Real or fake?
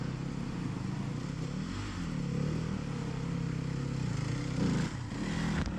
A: real